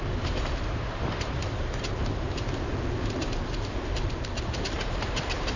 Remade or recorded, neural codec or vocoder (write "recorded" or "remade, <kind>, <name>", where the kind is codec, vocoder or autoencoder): remade, vocoder, BigVGAN v2